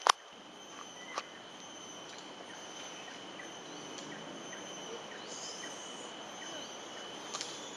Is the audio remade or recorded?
recorded